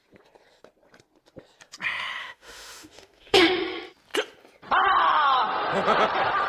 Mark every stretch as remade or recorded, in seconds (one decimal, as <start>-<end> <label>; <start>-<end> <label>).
0.0-2.2 recorded; 2.2-3.6 remade; 3.6-6.5 recorded